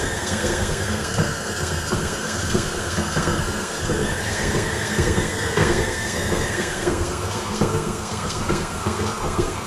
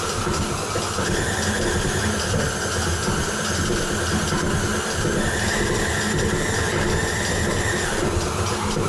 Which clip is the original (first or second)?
second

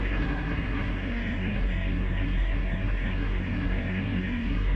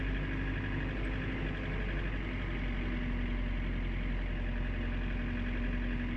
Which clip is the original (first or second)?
second